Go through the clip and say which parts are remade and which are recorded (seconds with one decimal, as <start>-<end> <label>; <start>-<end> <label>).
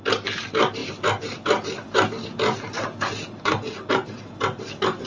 0.0-5.1 recorded